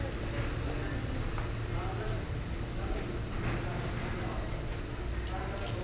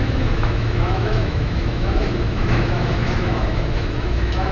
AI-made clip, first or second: second